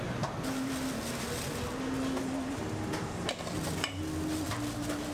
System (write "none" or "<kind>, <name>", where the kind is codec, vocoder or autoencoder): none